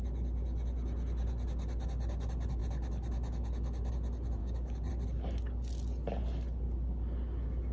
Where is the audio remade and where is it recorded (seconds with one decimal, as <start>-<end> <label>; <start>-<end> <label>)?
0.0-4.4 recorded; 4.4-4.9 remade; 4.9-7.7 recorded